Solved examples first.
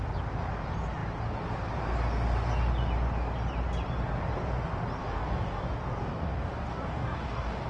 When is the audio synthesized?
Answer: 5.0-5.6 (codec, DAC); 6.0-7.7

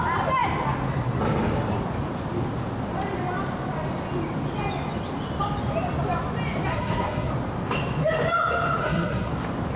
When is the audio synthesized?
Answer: 6.7-7.3 (codec, SNAC); 8.8-9.3

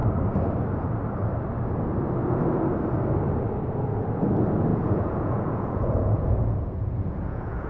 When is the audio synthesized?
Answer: 4.7-7.7 (vocoder, Vocos)

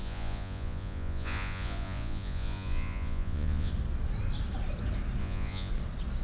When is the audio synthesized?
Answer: 0.0-3.7 (vocoder, Vocos); 5.2-5.7

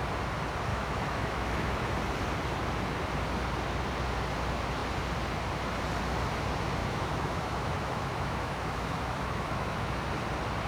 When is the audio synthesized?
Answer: 0.7-1.9 (autoencoder, DAC-VAE); 6.8-10.0